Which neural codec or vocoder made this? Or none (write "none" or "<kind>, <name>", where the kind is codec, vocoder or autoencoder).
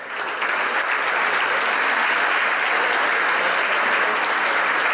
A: none